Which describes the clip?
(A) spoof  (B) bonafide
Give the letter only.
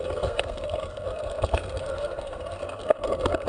A